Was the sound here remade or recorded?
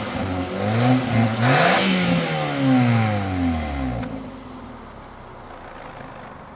recorded